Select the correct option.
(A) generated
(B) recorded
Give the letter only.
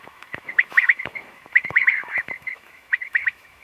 A